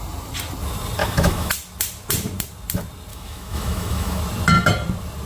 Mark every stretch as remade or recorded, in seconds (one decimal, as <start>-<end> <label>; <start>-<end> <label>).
0.0-1.0 recorded; 1.0-1.5 remade; 1.5-3.1 recorded; 3.1-4.2 remade; 4.2-5.3 recorded